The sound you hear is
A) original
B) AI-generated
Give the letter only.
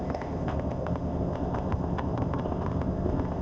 B